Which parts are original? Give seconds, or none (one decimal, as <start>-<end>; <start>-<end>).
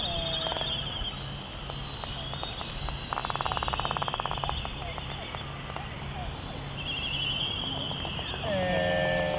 0.0-9.4